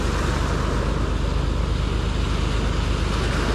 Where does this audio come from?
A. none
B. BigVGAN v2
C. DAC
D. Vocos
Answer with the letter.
A